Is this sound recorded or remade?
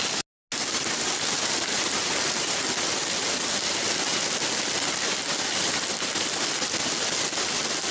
recorded